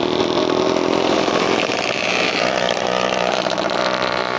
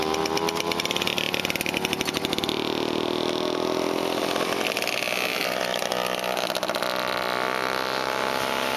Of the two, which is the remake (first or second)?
first